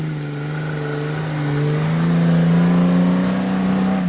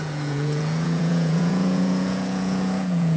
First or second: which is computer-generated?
second